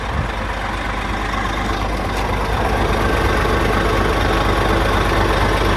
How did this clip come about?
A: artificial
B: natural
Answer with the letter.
B